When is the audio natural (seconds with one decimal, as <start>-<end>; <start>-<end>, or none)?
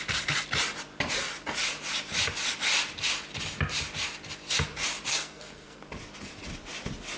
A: 0.0-5.1; 5.8-7.2